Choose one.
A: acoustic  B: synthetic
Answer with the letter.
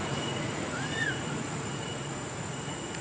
B